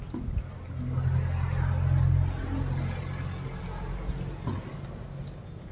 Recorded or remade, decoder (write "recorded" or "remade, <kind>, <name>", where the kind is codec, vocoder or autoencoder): recorded